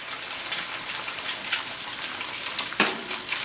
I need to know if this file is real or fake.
fake